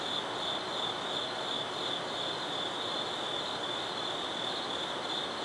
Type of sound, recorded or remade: recorded